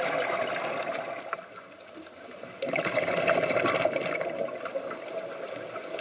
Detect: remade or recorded recorded